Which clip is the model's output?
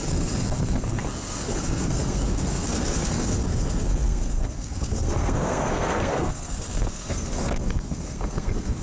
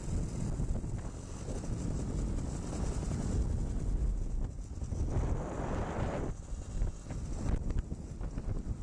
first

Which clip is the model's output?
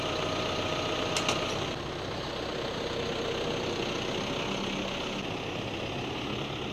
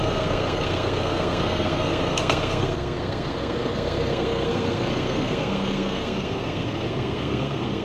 second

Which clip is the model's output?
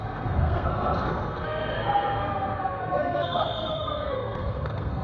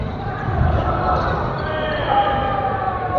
first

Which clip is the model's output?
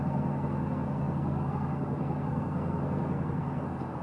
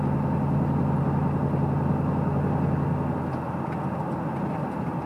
first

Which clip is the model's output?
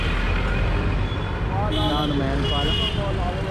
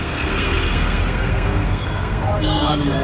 second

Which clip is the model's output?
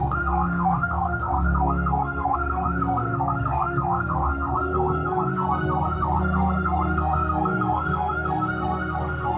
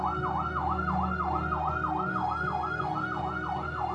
first